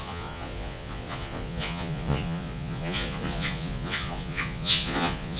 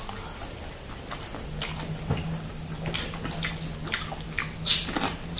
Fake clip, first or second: first